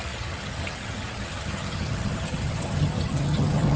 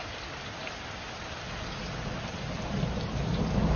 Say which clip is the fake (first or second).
first